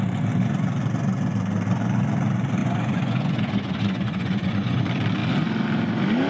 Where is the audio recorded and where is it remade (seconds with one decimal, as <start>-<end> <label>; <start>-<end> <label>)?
0.0-2.6 recorded; 2.6-4.8 remade; 4.8-6.3 recorded